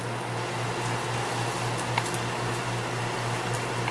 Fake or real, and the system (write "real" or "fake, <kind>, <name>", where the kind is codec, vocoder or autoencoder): real